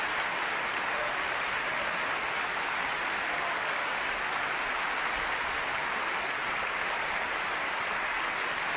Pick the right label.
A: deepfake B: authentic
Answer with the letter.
B